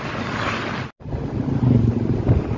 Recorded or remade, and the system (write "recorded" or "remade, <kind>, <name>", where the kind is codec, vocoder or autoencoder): recorded